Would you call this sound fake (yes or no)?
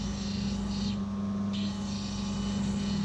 no